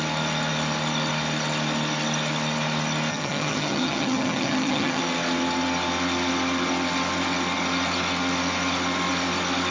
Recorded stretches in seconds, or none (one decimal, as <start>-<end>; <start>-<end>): 0.0-3.1; 5.0-9.7

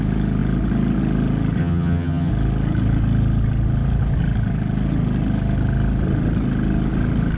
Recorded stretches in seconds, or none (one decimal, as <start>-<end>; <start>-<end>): 0.0-1.6; 2.3-7.4

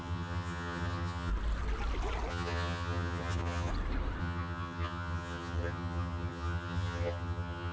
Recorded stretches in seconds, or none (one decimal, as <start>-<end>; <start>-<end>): 1.3-2.3; 3.7-4.2

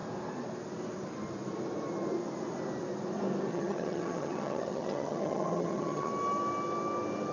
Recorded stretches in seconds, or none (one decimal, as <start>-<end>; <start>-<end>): 0.0-3.5; 6.1-7.3

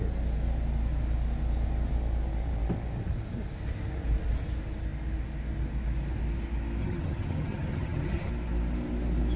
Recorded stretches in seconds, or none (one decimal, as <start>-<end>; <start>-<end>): 0.0-6.8; 8.3-9.4

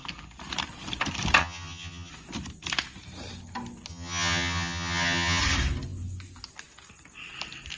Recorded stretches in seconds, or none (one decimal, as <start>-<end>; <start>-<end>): 0.0-1.4; 2.1-3.9; 5.4-7.8